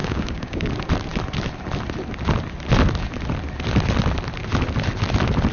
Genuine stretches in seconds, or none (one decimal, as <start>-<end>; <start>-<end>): 0.7-5.5